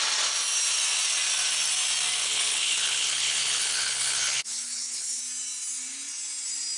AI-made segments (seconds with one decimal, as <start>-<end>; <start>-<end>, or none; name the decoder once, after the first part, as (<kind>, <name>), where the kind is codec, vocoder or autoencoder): 2.2-5.2 (codec, HILCodec)